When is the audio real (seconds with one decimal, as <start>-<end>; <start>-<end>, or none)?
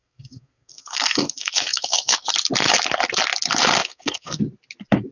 2.3-3.8; 4.4-5.1